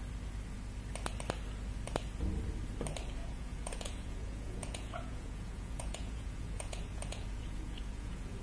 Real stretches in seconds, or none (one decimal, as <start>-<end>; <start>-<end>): 0.0-3.2